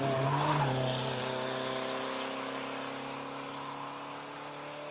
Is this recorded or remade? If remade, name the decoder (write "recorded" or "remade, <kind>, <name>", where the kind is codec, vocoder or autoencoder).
recorded